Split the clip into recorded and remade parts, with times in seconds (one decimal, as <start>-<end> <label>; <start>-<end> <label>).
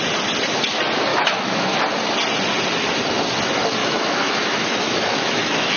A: 0.0-1.1 recorded; 1.1-1.8 remade; 1.8-3.8 recorded; 3.8-5.8 remade